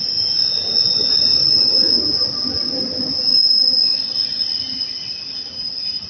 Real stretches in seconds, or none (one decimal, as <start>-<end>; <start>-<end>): 0.0-6.1